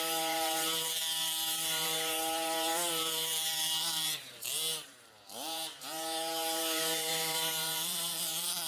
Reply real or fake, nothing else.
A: fake